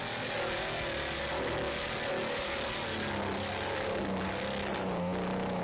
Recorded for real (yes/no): yes